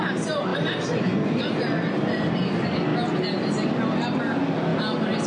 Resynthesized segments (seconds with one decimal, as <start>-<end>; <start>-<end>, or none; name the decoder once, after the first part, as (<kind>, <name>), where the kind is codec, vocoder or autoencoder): none